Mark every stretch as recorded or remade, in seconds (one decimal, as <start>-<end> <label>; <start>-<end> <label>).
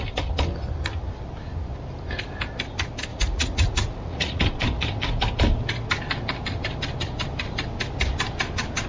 0.0-3.1 recorded; 3.1-4.4 remade; 4.4-8.9 recorded